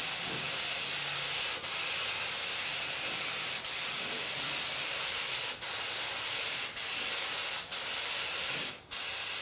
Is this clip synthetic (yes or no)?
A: no